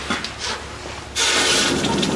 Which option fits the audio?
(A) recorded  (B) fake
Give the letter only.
A